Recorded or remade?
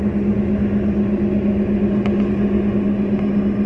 recorded